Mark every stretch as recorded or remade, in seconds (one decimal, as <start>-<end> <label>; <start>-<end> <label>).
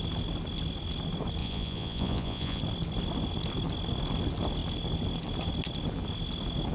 0.0-1.4 recorded; 1.4-2.6 remade; 2.6-6.7 recorded